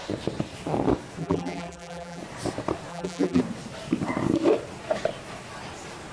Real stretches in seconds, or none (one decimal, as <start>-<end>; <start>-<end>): 0.0-1.2; 2.2-2.9; 3.4-6.1